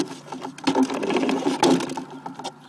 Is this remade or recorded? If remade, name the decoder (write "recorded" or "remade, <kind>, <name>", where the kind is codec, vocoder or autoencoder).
recorded